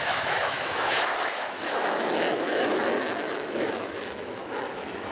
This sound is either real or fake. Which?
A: fake